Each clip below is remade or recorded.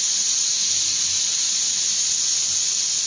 recorded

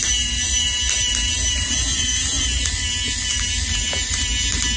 recorded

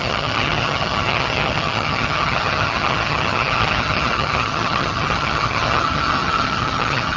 remade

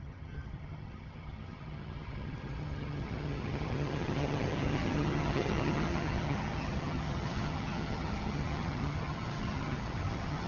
remade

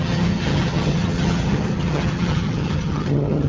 remade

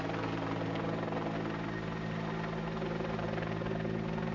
recorded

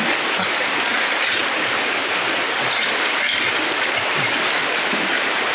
recorded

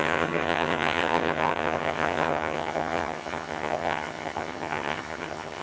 remade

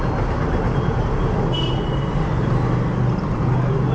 recorded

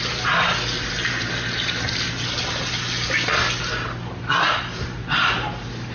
recorded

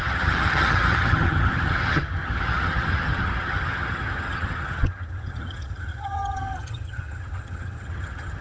remade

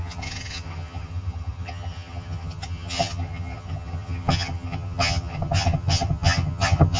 remade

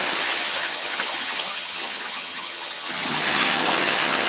remade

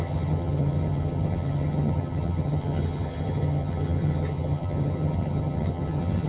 remade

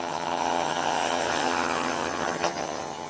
remade